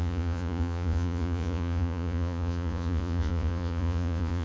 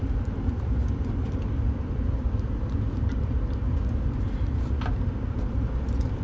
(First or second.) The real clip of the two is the second